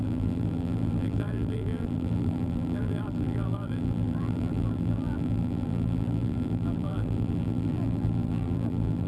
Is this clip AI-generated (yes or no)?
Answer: yes